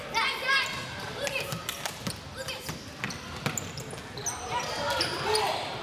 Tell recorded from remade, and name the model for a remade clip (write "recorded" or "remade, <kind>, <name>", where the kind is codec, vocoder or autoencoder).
recorded